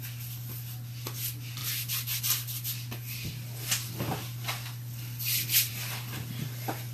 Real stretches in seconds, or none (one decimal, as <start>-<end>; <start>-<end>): 0.0-6.9